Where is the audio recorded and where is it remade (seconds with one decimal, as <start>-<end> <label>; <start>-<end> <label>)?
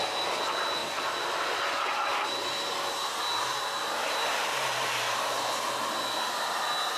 0.0-4.0 recorded; 4.0-5.2 remade; 5.2-7.0 recorded